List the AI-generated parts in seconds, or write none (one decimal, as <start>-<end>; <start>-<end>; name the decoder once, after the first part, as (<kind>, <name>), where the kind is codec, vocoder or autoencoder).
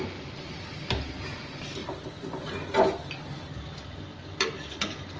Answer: none